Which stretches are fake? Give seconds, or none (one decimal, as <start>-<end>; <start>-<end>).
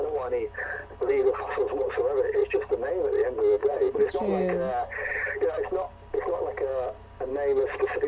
3.6-4.1